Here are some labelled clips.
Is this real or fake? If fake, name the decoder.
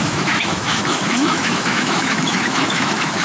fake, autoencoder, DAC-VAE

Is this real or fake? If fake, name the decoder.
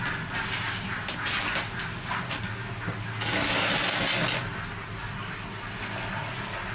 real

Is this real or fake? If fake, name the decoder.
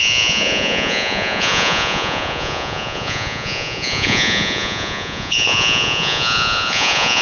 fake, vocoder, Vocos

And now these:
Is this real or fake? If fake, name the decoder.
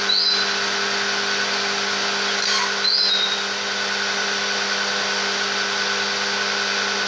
real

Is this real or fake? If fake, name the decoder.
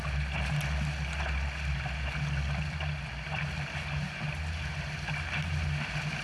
real